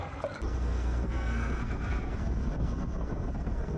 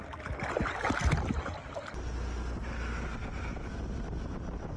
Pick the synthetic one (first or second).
first